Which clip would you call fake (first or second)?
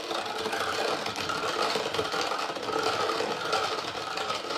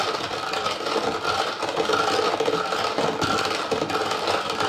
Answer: first